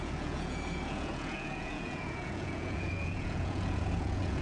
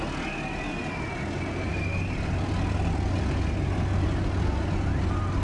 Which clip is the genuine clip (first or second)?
second